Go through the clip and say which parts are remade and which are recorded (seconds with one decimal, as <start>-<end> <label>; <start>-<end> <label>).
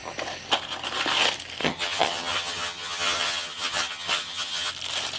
0.0-1.6 recorded; 1.6-4.7 remade; 4.7-5.2 recorded